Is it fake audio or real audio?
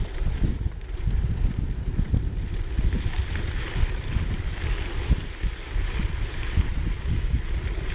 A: fake